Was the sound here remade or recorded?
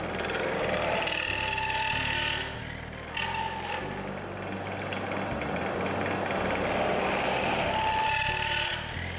recorded